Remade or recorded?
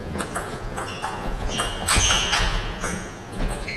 remade